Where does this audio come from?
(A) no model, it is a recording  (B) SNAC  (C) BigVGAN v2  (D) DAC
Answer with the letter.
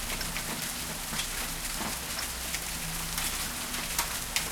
A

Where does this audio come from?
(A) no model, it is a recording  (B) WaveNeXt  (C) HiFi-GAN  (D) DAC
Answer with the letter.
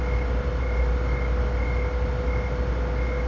A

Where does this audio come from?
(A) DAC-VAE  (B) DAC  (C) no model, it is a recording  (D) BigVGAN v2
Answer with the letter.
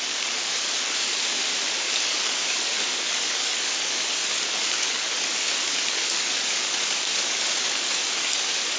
B